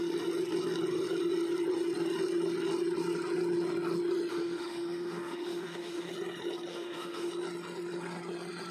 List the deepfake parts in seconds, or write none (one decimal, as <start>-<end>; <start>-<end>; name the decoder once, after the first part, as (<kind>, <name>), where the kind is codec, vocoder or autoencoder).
4.3-6.1 (autoencoder, DAC-VAE); 6.7-7.3